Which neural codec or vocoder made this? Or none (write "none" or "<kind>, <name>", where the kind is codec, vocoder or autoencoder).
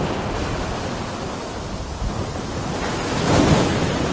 none